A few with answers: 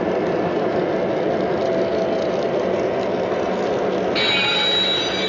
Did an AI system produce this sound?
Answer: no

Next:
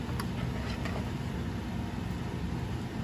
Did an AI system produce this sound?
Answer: no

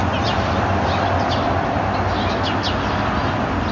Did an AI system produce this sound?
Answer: no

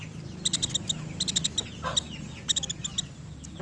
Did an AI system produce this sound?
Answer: no